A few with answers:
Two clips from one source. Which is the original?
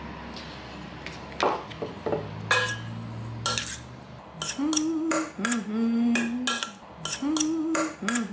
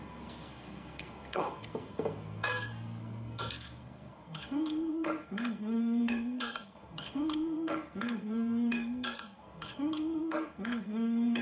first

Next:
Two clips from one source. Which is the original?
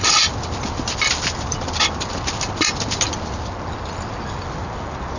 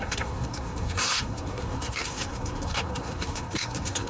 first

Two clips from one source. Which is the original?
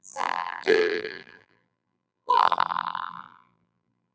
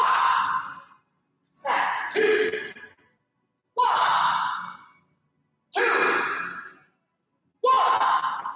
second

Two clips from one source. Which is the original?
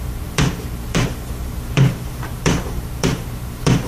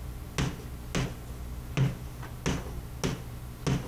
second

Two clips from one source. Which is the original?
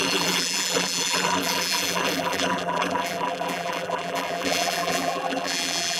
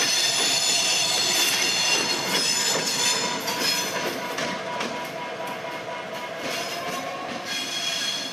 second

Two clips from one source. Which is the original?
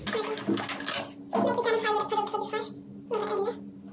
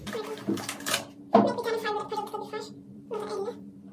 first